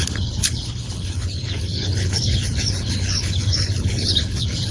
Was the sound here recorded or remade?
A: remade